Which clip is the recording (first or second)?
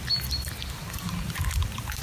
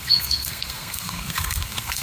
first